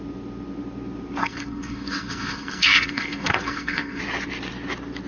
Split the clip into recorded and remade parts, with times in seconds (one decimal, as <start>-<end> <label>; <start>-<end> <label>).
0.0-1.2 recorded; 1.2-4.0 remade; 4.0-5.1 recorded